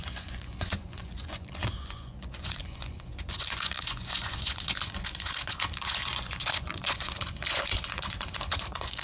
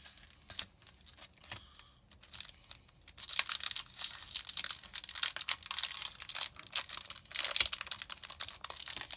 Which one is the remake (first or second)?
first